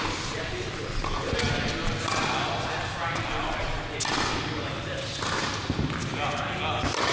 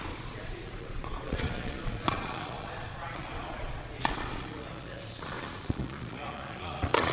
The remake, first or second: second